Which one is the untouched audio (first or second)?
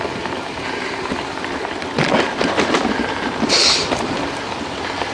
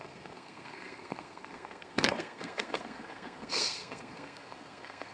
first